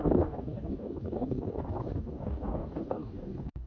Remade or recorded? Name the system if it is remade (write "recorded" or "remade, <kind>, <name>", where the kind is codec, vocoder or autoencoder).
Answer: remade, codec, DAC